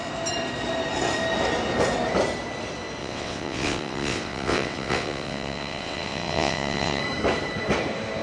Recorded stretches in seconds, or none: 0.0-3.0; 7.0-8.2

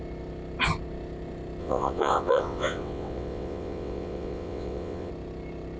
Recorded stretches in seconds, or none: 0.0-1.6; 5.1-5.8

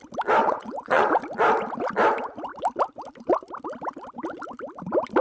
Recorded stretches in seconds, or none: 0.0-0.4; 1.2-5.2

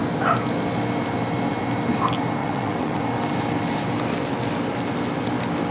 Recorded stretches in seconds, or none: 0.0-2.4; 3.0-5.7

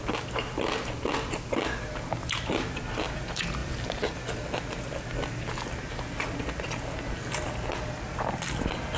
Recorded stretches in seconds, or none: 0.0-9.0

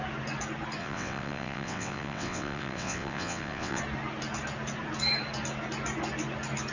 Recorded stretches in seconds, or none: 0.0-0.8; 3.8-6.7

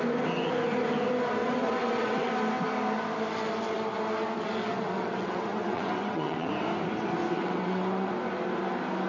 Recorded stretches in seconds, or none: 0.0-1.4; 2.3-4.7; 6.5-7.4; 8.1-9.1

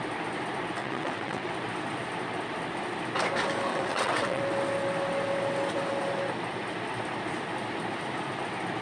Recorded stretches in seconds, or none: 0.0-0.8; 1.5-3.7; 4.4-8.8